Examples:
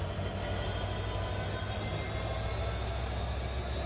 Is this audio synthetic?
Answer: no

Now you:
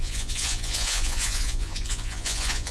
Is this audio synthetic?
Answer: yes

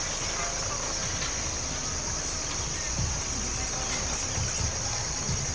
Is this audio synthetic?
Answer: no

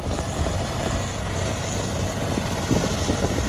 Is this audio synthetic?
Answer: no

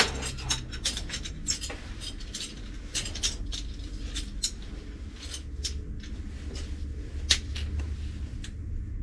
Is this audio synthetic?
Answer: no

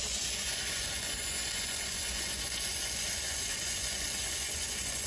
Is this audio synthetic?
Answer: yes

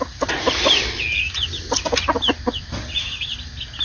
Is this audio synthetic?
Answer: no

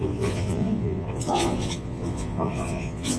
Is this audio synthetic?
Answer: yes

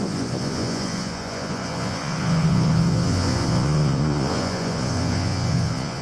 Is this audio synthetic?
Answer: yes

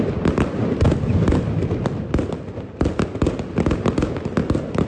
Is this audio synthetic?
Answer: no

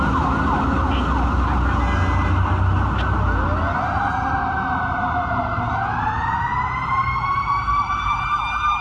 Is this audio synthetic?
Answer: no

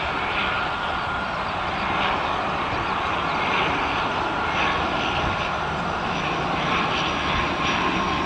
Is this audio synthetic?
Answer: no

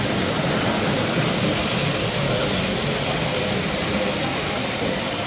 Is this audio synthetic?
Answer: no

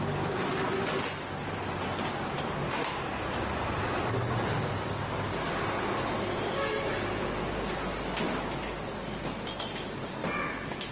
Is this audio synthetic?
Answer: no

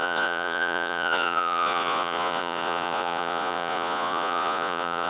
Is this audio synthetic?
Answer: yes